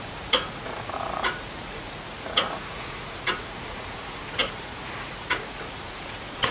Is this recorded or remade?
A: remade